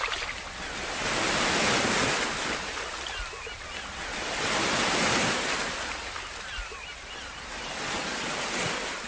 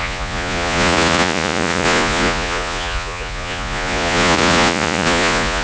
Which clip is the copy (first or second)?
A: second